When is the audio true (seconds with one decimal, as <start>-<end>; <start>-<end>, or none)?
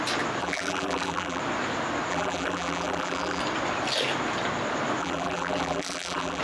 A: 0.0-0.4; 1.4-2.1; 3.4-5.0